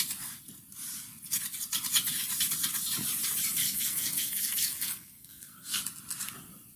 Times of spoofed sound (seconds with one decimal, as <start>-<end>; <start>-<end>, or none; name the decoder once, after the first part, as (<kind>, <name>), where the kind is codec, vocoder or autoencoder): 3.6-5.8 (codec, SNAC)